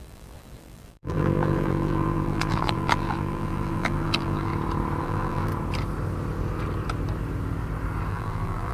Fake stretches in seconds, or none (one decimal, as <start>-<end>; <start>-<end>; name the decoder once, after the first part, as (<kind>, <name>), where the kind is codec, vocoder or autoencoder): 0.0-4.5 (vocoder, BigVGAN v2); 5.0-5.5; 8.1-8.7